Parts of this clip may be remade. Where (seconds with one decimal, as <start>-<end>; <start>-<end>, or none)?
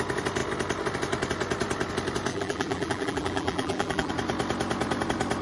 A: 2.3-4.1